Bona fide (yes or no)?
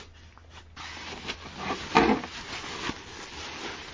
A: yes